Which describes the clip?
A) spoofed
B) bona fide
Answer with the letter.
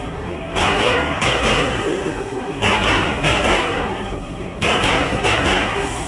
A